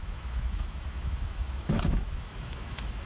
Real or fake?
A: fake